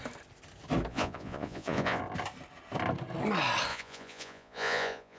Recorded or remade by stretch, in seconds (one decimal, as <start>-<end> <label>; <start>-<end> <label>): 0.0-0.9 recorded; 0.9-2.0 remade; 2.0-3.7 recorded; 3.7-5.2 remade